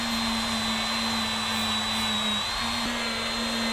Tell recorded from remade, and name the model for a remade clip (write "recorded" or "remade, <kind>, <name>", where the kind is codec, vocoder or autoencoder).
recorded